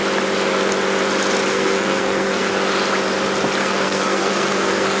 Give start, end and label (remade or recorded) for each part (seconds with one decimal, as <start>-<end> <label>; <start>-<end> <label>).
0.0-1.5 recorded; 1.5-2.5 remade; 2.5-3.6 recorded; 3.6-5.0 remade

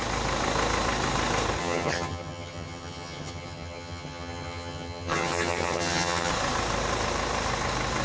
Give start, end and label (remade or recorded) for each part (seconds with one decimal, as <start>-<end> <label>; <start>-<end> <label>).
0.0-1.6 recorded; 1.6-6.3 remade; 6.3-8.0 recorded

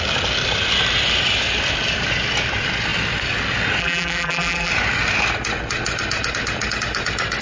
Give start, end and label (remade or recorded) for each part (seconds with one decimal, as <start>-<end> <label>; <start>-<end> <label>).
0.0-3.8 recorded; 3.8-4.7 remade; 4.7-7.4 recorded

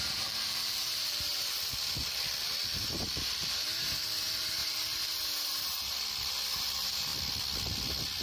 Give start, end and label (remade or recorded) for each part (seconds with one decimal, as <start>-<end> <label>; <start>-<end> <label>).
0.0-1.3 remade; 1.3-2.8 recorded; 2.8-7.1 remade; 7.1-8.2 recorded

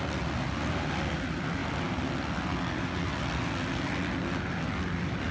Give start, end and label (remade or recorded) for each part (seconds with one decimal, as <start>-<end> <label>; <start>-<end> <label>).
0.0-5.3 recorded

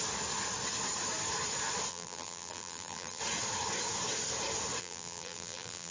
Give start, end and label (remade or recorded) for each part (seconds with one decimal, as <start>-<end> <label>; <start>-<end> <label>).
0.0-1.9 recorded; 1.9-3.2 remade; 3.2-4.8 recorded; 4.8-5.9 remade

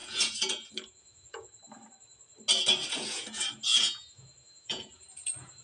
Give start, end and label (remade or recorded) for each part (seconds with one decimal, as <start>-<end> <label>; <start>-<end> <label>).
0.0-1.6 remade; 1.6-2.9 recorded; 2.9-5.6 remade